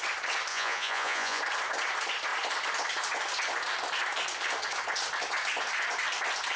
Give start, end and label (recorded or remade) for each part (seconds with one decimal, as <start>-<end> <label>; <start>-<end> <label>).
0.0-0.5 recorded; 0.5-1.4 remade; 1.4-6.6 recorded